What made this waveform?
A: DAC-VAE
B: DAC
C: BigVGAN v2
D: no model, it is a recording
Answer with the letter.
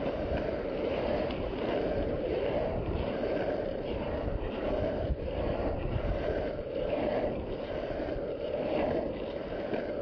C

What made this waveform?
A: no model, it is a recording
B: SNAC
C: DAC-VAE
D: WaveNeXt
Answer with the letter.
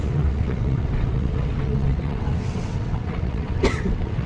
D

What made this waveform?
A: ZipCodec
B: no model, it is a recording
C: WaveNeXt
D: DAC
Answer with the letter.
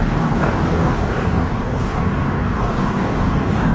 D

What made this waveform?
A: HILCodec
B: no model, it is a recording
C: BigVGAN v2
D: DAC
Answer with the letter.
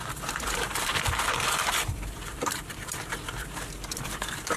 C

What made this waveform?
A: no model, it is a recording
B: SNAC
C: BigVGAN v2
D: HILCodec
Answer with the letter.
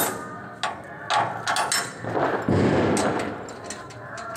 A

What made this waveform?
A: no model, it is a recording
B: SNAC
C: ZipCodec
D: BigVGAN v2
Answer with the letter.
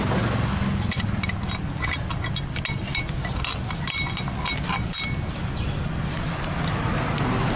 A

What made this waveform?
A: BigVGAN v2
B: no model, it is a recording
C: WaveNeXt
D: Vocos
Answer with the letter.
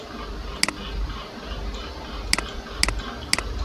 B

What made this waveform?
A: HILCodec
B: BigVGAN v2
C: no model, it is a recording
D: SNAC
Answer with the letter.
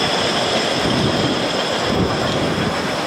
C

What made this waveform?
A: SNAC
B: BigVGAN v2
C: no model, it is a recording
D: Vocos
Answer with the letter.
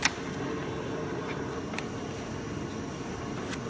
C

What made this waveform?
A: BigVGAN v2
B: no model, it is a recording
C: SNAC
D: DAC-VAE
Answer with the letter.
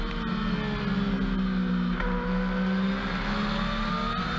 B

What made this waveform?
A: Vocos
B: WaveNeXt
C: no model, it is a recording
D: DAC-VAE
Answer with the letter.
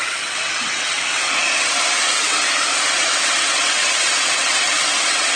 B